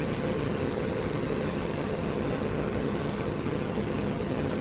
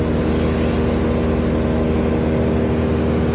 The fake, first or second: first